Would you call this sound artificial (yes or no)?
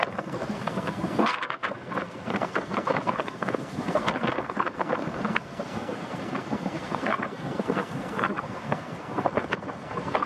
yes